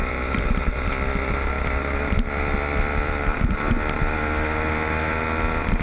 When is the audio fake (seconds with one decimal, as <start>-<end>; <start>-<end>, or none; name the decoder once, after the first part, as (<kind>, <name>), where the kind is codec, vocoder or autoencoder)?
0.0-0.9 (vocoder, BigVGAN v2)